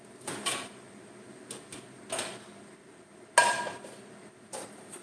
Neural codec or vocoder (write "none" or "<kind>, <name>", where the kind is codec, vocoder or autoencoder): none